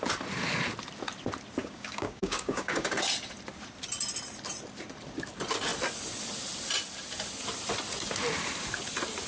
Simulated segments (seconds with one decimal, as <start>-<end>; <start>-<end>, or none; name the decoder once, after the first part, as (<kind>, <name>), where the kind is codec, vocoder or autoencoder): 1.6-2.9 (codec, DAC)